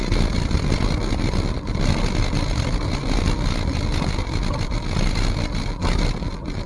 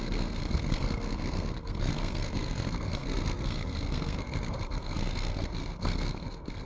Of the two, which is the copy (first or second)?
second